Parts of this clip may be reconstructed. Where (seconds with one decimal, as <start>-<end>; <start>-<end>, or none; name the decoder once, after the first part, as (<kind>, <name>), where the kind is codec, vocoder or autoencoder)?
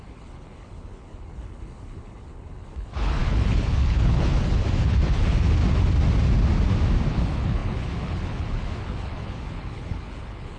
0.0-5.6 (codec, HILCodec); 7.1-10.6